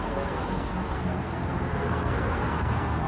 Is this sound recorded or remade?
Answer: remade